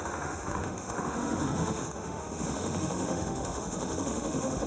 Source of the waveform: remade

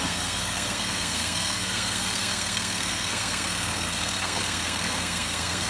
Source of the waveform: remade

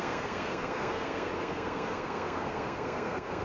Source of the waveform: remade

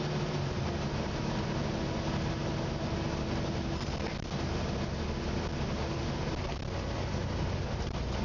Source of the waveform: recorded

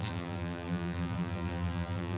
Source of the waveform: remade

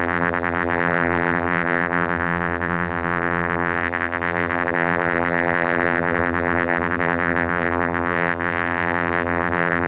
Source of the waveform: remade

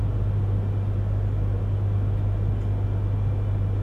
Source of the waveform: recorded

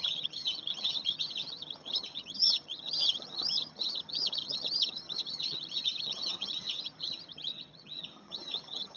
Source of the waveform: remade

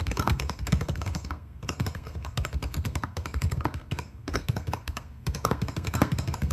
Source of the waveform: remade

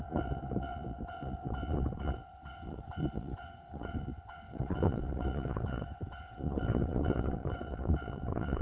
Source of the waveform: remade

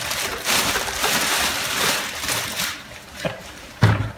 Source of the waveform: remade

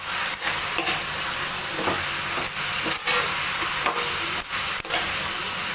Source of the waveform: recorded